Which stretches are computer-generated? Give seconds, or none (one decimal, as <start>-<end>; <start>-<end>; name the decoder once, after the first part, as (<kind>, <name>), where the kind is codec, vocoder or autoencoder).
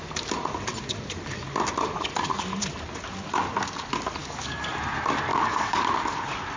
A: 4.2-4.7 (codec, DAC); 5.3-5.9